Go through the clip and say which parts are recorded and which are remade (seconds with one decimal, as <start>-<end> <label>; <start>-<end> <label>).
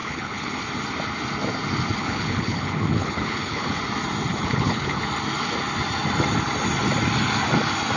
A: 0.0-0.6 remade; 0.6-2.0 recorded; 2.0-3.8 remade; 3.8-4.3 recorded; 4.3-5.0 remade; 5.0-8.0 recorded